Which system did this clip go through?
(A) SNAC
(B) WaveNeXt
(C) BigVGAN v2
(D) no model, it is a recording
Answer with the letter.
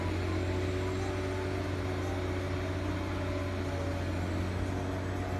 D